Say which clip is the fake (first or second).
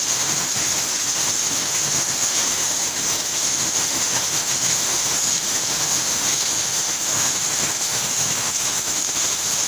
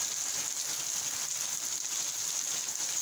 first